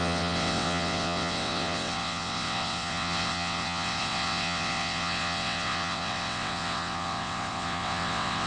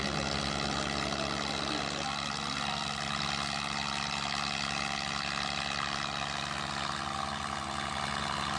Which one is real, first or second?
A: second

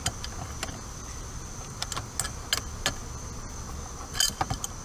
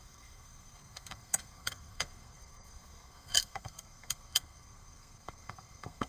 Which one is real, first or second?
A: first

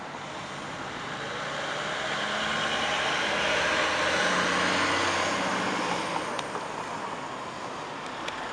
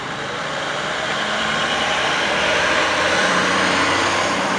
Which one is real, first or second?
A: first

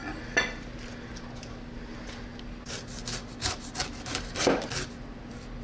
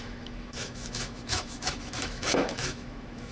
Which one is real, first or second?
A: first